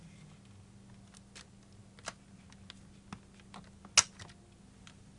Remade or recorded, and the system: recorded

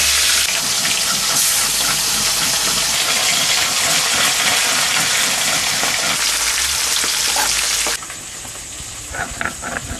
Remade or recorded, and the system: recorded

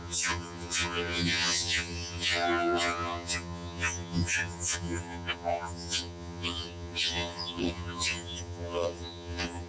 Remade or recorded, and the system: remade, vocoder, HiFi-GAN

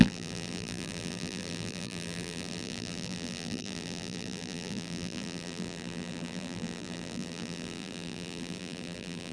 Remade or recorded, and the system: remade, vocoder, BigVGAN v2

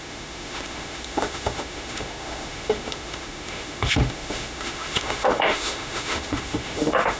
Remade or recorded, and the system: remade, autoencoder, DAC-VAE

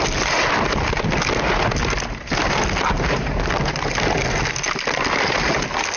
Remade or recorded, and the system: recorded